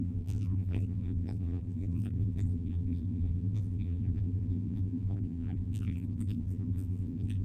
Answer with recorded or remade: remade